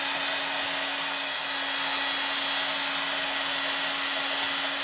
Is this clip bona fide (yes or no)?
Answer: yes